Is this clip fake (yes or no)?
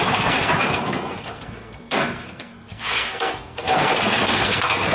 yes